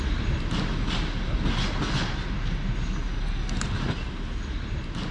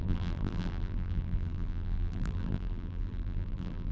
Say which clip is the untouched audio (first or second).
first